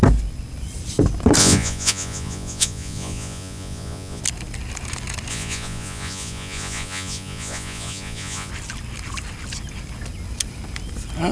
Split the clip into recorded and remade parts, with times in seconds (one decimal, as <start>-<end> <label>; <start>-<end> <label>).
0.0-1.4 recorded; 1.4-4.2 remade; 4.2-5.3 recorded; 5.3-8.5 remade; 8.5-11.3 recorded